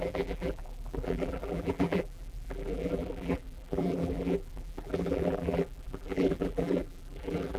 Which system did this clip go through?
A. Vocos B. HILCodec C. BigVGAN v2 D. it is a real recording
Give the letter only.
C